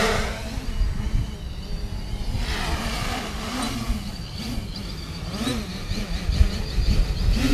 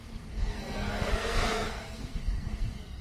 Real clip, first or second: first